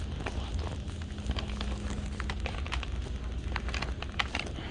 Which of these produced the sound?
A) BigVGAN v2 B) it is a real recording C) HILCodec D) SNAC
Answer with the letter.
B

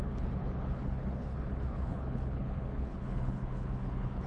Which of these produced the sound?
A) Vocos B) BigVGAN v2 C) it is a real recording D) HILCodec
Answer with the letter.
D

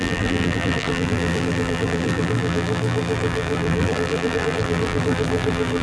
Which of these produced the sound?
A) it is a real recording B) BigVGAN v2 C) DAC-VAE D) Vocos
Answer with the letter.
B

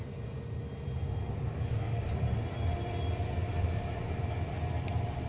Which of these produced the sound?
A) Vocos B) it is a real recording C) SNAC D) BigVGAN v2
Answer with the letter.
D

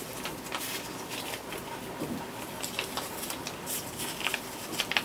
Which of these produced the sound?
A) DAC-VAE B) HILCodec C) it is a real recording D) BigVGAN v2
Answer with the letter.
C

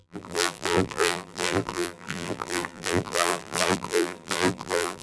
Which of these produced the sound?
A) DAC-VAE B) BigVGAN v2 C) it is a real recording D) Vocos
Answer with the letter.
B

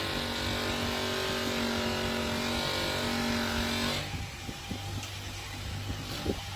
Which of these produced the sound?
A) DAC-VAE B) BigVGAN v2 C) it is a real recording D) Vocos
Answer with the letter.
C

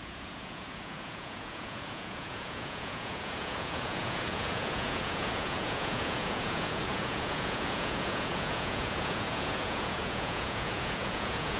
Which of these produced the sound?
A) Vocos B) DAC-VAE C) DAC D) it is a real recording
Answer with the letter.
A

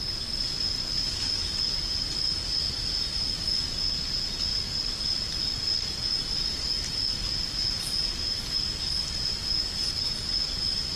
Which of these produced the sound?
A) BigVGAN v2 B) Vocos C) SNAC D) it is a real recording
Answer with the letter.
D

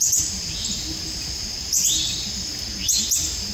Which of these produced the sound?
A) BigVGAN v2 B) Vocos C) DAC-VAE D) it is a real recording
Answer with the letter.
D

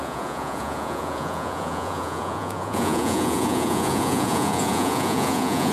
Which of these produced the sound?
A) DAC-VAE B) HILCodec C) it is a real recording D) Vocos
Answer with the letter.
D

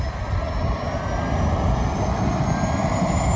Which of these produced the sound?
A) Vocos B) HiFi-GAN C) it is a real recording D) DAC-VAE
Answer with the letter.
C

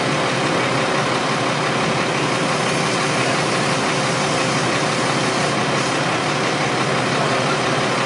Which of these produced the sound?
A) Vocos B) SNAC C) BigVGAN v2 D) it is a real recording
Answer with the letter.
D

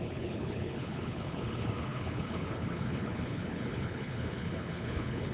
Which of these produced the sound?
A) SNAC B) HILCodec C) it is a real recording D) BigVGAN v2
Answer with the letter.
B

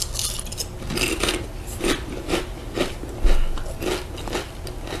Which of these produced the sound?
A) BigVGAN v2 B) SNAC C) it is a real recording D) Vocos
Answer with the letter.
C